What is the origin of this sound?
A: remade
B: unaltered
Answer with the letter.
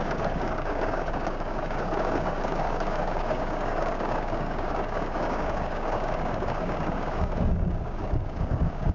A